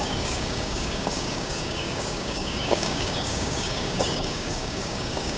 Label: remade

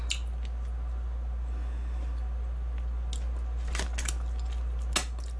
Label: recorded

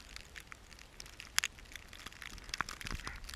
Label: recorded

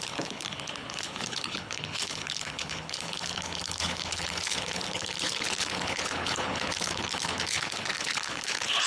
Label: remade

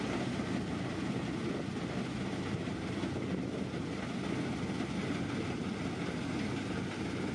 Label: recorded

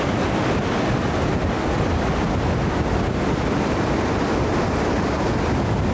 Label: recorded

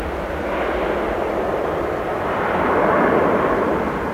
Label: recorded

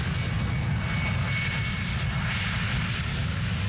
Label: recorded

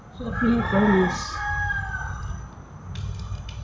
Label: recorded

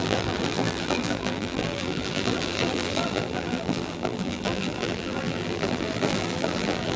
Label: remade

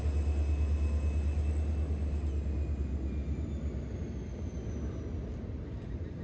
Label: recorded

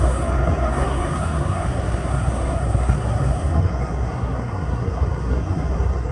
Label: remade